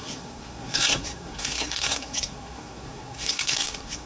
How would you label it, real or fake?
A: fake